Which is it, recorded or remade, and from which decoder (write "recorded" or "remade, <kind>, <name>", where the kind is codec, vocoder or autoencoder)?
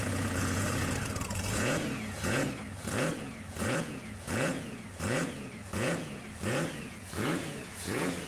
remade, vocoder, Vocos